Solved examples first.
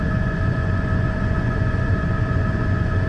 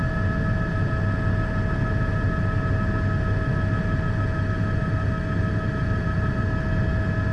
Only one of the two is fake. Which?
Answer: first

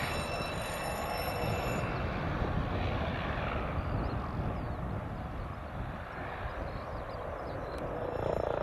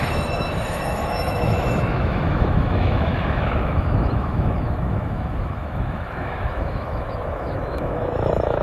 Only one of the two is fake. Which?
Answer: second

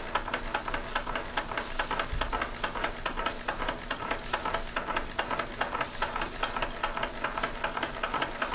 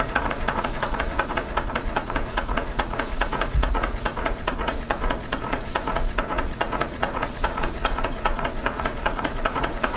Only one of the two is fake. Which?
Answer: second